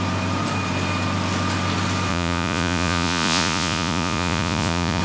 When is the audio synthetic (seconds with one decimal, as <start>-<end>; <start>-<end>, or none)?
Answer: 2.1-5.0

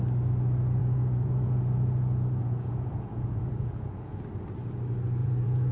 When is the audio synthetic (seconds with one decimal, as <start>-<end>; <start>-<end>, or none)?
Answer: 0.8-4.2; 5.2-5.7

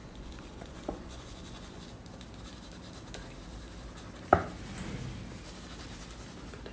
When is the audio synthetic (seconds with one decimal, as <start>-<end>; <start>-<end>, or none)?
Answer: 0.0-1.9

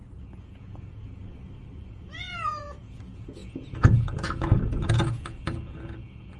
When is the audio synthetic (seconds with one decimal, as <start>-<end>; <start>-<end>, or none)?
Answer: 0.0-1.2; 1.9-6.4